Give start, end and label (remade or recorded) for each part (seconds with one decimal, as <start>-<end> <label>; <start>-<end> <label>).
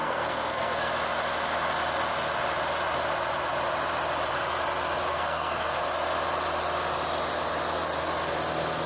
0.0-0.9 remade; 0.9-5.1 recorded; 5.1-5.7 remade; 5.7-8.9 recorded